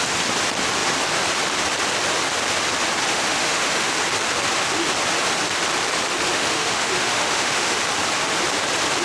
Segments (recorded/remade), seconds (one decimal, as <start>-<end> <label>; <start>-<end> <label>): 0.0-3.1 recorded; 3.1-4.0 remade; 4.0-6.3 recorded; 6.3-7.8 remade; 7.8-9.0 recorded